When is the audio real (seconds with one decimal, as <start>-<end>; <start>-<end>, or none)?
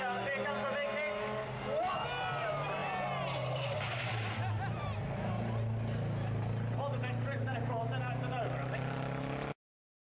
0.0-10.0